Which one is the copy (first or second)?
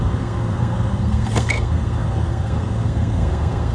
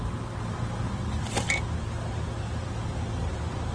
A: first